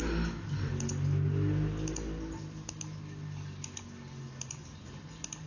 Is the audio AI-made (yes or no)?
no